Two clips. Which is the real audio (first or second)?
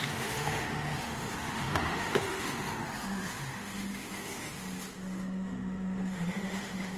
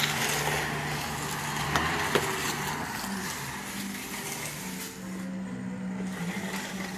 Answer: second